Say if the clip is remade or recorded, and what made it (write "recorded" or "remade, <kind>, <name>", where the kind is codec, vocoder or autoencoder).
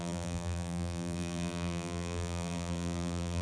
remade, vocoder, BigVGAN v2